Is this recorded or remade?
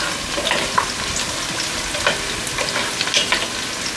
recorded